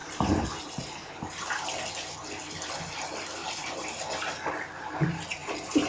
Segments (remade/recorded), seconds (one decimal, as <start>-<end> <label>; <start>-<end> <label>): 0.0-1.5 remade; 1.5-3.4 recorded; 3.4-4.2 remade; 4.2-5.4 recorded; 5.4-5.9 remade